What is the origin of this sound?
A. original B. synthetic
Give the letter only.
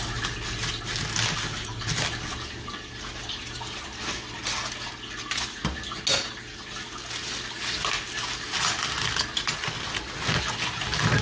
A